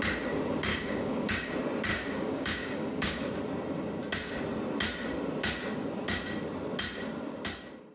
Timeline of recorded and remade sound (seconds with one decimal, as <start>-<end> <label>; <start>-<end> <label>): 0.0-0.7 recorded; 0.7-1.5 remade; 1.5-1.9 recorded; 1.9-3.4 remade; 3.4-7.9 recorded